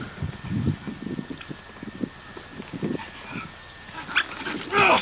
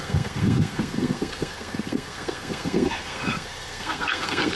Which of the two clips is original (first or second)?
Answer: first